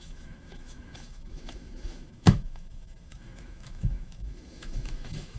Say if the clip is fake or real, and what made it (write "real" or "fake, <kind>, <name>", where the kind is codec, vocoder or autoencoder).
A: fake, autoencoder, DAC-VAE